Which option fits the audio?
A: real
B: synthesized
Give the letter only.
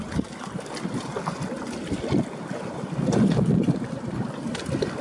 A